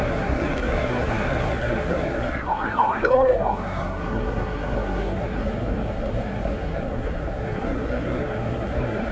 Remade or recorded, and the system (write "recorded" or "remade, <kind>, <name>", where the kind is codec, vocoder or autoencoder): remade, codec, SNAC